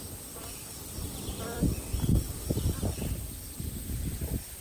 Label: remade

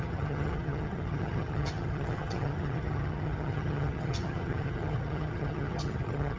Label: remade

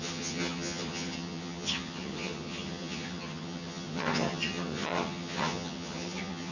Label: remade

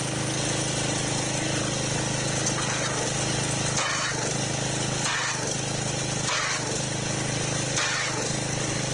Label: recorded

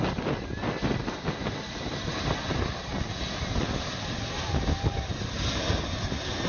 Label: recorded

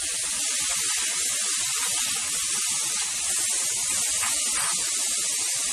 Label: recorded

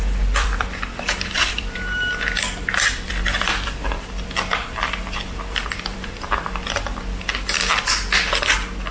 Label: remade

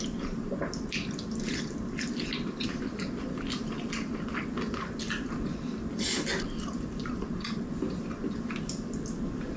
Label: recorded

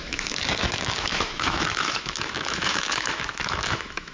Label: remade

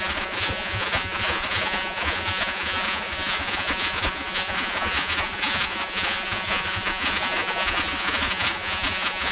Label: remade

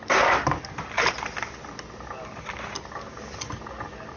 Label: recorded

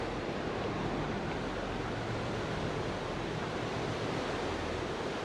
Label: remade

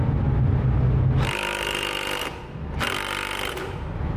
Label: recorded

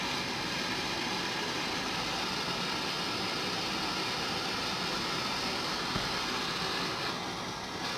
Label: recorded